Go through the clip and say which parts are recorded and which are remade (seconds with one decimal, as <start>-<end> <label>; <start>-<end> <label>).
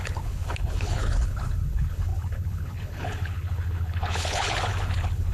0.0-5.3 remade